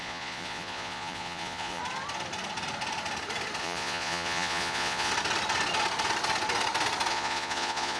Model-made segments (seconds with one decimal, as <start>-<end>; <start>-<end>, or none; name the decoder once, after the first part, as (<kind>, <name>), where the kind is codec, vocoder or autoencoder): 0.0-1.8 (vocoder, Vocos); 3.6-5.1; 7.1-8.0